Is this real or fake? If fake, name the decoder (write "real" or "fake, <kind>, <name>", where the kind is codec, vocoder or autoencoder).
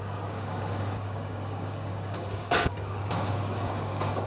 fake, codec, DAC